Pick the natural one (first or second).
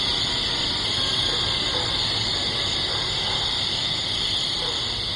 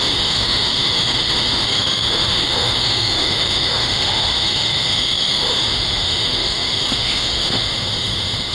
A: first